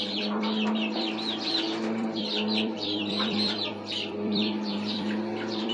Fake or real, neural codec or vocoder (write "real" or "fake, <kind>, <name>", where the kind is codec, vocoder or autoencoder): fake, vocoder, BigVGAN v2